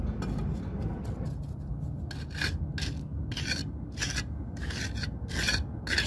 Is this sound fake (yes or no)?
no